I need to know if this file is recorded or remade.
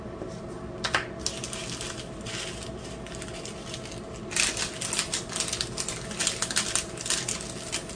recorded